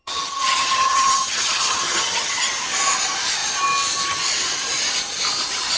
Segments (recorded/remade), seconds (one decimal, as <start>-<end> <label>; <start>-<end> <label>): 0.0-2.5 remade; 2.5-5.8 recorded